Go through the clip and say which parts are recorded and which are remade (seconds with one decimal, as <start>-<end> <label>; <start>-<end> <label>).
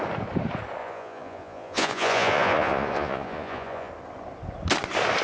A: 0.0-0.8 recorded; 0.8-3.9 remade; 3.9-5.2 recorded